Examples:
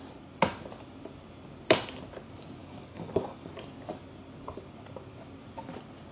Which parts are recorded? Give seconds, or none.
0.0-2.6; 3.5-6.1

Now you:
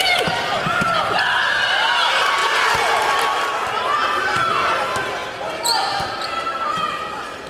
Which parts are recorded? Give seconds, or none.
0.0-7.5

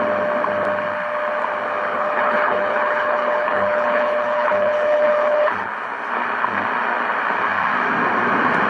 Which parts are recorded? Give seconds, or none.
0.0-1.9; 5.7-8.7

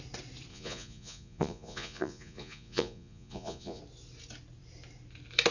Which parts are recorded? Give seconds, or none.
0.0-0.5; 3.8-5.5